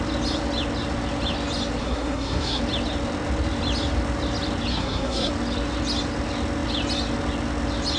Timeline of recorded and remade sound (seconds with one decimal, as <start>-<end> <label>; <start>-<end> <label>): 0.0-1.8 recorded; 1.8-2.6 remade; 2.6-4.7 recorded; 4.7-5.3 remade; 5.3-8.0 recorded